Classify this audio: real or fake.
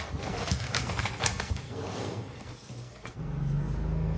fake